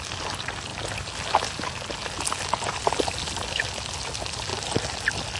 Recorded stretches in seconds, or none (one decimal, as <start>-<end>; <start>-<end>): 0.0-0.7; 1.3-5.4